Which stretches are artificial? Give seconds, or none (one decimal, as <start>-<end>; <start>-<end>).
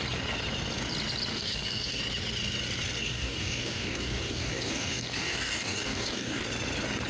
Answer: 1.3-2.0; 3.0-6.4